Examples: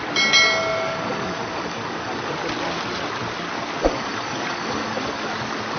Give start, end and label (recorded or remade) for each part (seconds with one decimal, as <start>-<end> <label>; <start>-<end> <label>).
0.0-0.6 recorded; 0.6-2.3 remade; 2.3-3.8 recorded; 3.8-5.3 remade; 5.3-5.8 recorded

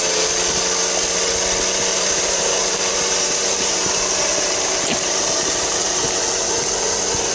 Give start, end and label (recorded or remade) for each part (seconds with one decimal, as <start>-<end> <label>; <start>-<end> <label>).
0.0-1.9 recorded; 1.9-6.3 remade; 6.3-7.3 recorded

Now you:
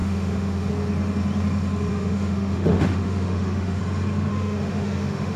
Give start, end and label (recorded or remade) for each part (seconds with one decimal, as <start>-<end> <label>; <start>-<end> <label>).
0.0-0.7 remade; 0.7-1.9 recorded; 1.9-3.8 remade; 3.8-4.3 recorded; 4.3-5.4 remade